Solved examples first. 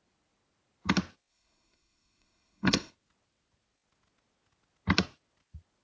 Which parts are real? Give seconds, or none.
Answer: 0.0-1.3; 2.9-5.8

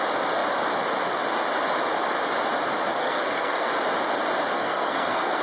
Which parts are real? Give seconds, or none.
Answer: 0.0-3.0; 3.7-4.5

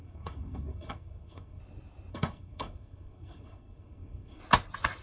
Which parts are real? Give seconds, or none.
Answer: 1.6-2.1; 4.4-5.0

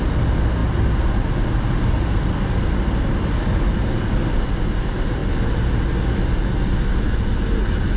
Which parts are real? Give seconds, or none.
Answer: 0.0-8.0